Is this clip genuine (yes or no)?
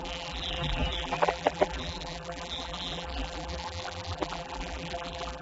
no